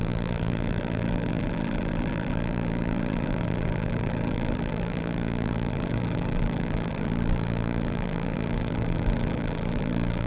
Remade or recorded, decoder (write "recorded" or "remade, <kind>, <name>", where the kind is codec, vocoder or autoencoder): remade, vocoder, BigVGAN v2